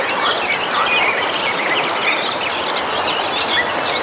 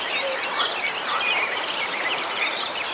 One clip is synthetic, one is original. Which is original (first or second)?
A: first